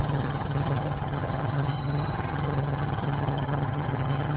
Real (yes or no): no